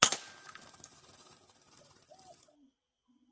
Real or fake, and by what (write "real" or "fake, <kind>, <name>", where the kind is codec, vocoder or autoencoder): real